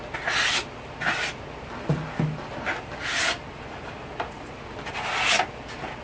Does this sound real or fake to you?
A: real